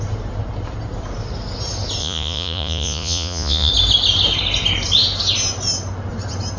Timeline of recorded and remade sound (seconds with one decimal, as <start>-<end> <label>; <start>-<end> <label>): 0.0-2.0 recorded; 2.0-3.7 remade; 3.7-6.6 recorded